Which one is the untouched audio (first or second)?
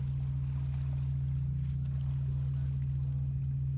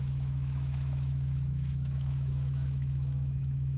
first